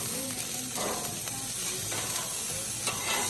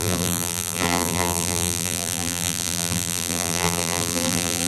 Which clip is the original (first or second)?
first